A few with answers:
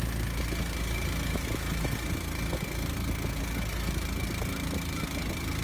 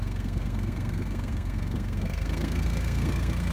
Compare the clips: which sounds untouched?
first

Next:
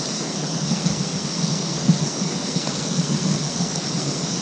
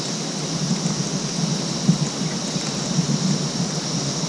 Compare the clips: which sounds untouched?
second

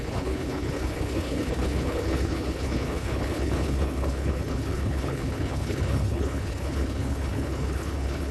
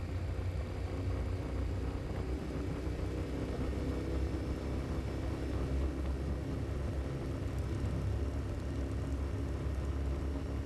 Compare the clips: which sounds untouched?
second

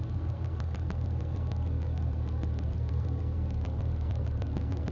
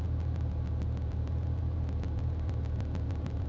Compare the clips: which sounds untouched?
second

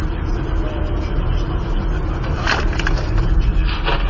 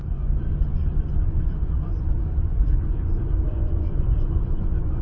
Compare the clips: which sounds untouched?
first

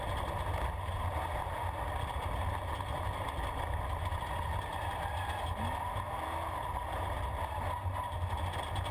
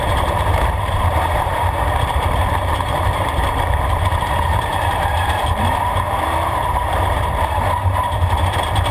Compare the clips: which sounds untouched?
first